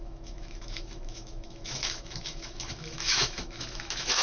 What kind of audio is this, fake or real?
fake